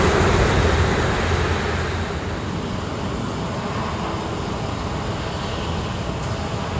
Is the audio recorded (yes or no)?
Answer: yes